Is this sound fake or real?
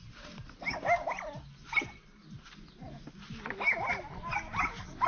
real